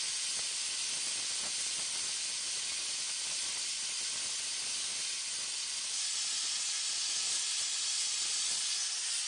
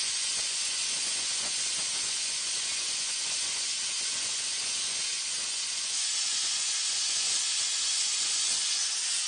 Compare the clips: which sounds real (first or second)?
first